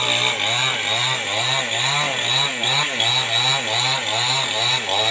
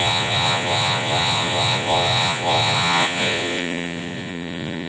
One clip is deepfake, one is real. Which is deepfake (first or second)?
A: second